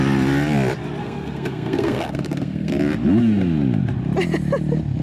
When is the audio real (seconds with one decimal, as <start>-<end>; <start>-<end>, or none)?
0.0-1.0; 2.7-5.0